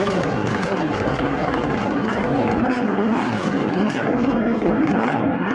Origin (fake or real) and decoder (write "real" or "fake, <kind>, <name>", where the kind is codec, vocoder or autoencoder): fake, codec, SNAC